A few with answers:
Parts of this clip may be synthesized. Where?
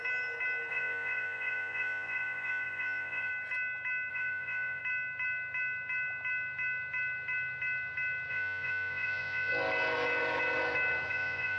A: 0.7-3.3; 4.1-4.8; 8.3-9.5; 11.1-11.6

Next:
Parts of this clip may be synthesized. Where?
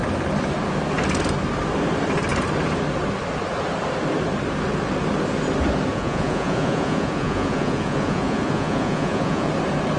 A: 5.9-9.5